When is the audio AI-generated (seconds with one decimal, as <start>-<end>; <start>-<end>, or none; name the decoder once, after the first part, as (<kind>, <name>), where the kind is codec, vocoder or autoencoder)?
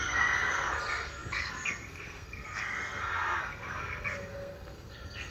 0.0-5.3 (codec, SNAC)